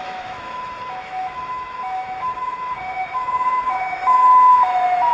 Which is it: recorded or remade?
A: remade